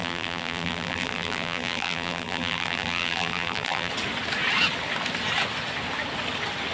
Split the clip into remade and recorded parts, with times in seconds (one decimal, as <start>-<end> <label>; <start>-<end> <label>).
0.0-3.9 remade; 3.9-6.7 recorded